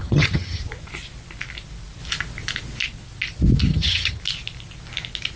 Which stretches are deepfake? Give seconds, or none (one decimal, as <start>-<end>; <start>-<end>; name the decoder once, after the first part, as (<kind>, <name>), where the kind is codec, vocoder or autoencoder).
0.0-0.6 (vocoder, HiFi-GAN); 3.7-4.2

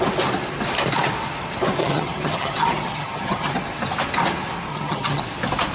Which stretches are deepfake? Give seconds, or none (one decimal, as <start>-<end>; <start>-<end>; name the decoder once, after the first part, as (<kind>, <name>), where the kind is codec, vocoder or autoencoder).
1.8-3.5 (vocoder, HiFi-GAN); 4.7-5.2